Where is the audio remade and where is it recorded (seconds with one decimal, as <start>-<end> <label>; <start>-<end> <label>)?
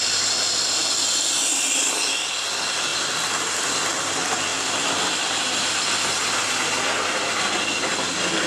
0.0-8.5 recorded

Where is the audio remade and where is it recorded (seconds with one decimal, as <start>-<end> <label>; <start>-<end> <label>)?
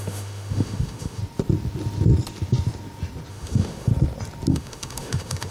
0.0-1.2 remade; 1.2-3.3 recorded; 3.3-3.9 remade; 3.9-4.5 recorded; 4.5-5.5 remade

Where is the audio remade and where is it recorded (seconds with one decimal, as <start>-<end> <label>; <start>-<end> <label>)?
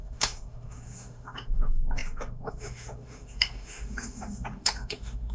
0.0-5.3 remade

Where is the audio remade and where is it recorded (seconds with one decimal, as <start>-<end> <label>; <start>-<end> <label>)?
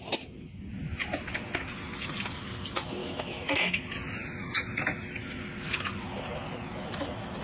0.0-3.0 recorded; 3.0-3.8 remade; 3.8-7.4 recorded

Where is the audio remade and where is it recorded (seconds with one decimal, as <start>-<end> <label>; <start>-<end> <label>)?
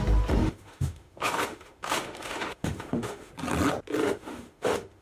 0.0-0.4 recorded; 0.4-3.3 remade; 3.3-4.0 recorded; 4.0-5.0 remade